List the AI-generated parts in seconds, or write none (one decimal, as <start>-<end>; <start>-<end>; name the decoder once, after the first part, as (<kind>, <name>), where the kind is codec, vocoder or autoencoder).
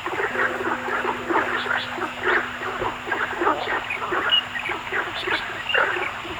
none